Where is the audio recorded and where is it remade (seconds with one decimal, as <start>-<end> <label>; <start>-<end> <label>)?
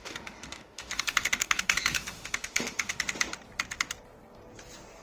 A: 0.0-3.0 remade; 3.0-5.0 recorded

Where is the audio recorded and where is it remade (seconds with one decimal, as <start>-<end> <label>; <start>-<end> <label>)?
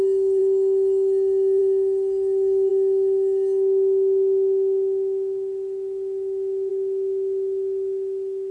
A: 0.0-8.5 recorded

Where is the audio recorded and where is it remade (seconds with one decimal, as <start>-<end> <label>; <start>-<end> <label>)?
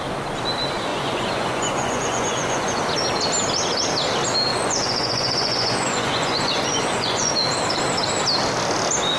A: 0.0-0.9 recorded; 0.9-2.8 remade; 2.8-4.5 recorded; 4.5-7.3 remade; 7.3-9.2 recorded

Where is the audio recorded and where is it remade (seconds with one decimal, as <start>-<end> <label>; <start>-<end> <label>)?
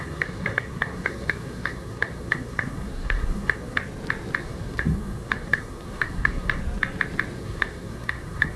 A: 0.0-3.8 remade; 3.8-4.4 recorded; 4.4-6.6 remade; 6.6-7.4 recorded; 7.4-8.6 remade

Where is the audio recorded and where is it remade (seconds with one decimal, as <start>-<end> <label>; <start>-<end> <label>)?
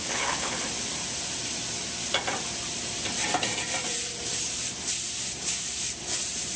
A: 0.0-0.6 remade; 0.6-6.6 recorded